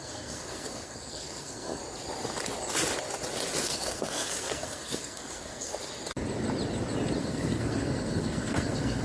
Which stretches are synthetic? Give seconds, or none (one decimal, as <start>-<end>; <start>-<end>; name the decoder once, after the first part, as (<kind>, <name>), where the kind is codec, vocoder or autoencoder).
0.0-1.8 (codec, SNAC); 3.6-5.7; 7.2-9.0